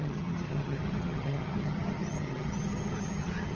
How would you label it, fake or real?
fake